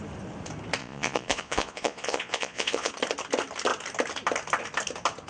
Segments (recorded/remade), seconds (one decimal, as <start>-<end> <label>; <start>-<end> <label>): 0.0-0.8 recorded; 0.8-2.9 remade; 2.9-5.3 recorded